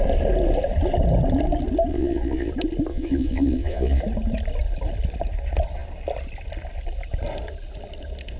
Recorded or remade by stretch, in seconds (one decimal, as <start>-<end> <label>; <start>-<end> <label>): 0.0-1.9 recorded; 1.9-2.5 remade; 2.5-2.9 recorded; 2.9-4.0 remade; 4.0-8.4 recorded